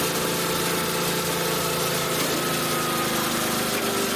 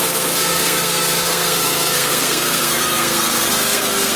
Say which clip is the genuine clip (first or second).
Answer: first